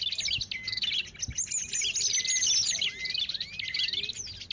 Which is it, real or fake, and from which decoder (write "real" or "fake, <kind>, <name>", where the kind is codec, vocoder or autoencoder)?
real